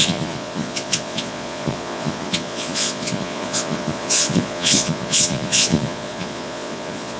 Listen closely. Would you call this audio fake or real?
fake